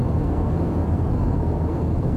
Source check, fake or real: fake